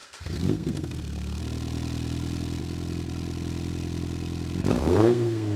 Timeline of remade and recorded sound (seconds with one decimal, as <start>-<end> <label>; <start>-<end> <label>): 0.0-1.4 remade; 1.4-4.7 recorded; 4.7-5.6 remade